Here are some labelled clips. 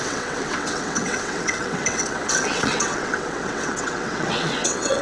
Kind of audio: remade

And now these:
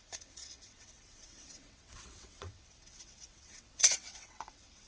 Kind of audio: remade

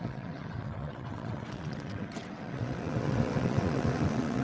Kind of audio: remade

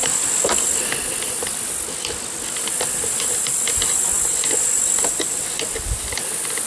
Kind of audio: recorded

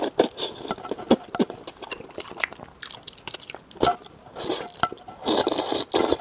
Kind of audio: recorded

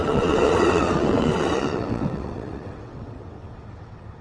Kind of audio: remade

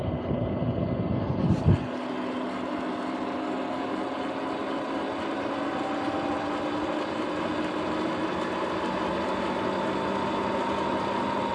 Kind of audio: recorded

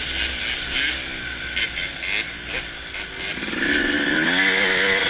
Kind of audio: recorded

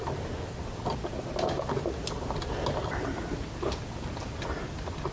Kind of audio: recorded